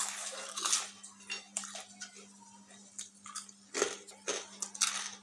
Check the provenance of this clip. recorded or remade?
recorded